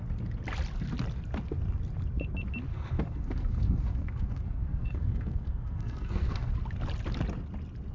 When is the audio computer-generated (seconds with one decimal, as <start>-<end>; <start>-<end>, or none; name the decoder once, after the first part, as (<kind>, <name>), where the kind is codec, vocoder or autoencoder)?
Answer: 2.7-6.5 (codec, SNAC)